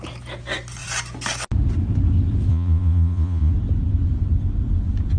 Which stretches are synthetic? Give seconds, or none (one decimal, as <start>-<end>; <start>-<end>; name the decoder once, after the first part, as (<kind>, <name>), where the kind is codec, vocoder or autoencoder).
2.5-3.5 (vocoder, Vocos)